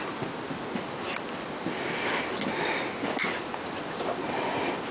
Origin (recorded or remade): recorded